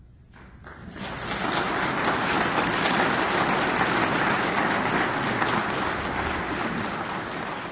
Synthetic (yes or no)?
no